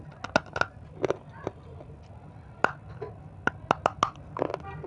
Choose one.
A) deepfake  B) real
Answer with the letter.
B